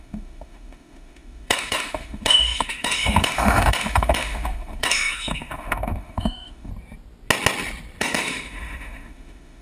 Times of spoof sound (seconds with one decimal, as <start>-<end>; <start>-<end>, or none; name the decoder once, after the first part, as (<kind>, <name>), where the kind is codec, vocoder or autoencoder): 0.0-6.7 (autoencoder, DAC-VAE); 8.0-9.6